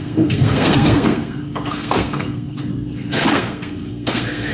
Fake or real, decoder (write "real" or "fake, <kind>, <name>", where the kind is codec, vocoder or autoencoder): fake, codec, SNAC